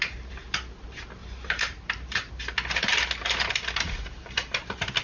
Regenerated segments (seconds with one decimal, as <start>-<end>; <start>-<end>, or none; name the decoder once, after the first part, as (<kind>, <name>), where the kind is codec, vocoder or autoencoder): 1.2-2.3 (vocoder, BigVGAN v2)